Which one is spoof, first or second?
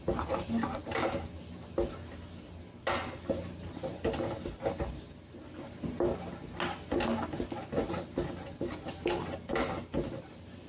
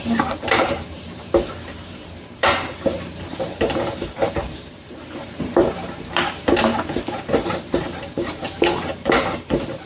second